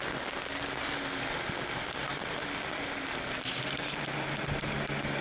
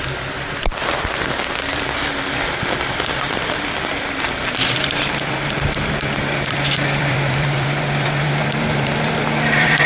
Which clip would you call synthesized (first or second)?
second